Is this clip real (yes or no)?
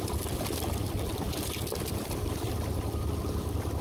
yes